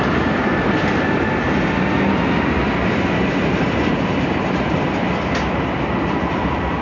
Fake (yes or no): yes